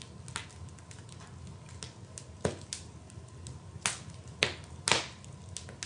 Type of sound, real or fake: real